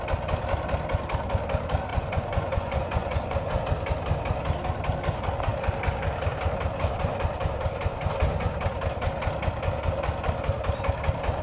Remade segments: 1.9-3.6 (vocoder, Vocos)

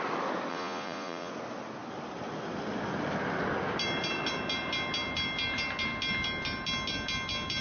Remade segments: 0.5-1.3 (vocoder, Vocos)

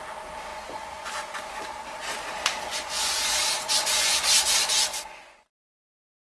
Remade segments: 0.5-1.6 (vocoder, Vocos); 2.7-3.4; 3.8-4.3; 4.9-6.0

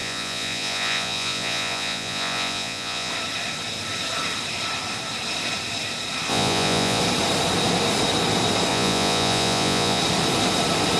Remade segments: 0.0-3.1 (vocoder, Vocos); 6.3-7.0; 8.7-10.0